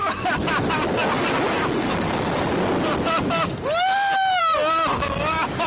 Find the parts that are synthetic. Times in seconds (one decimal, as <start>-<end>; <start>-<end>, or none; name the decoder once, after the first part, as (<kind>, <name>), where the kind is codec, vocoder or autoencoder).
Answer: none